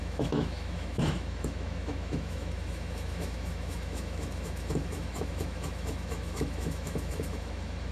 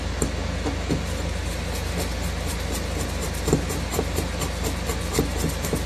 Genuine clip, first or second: second